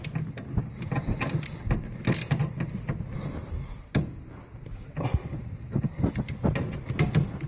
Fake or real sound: real